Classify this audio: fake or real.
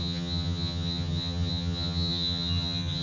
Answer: fake